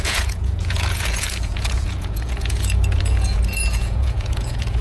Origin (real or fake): fake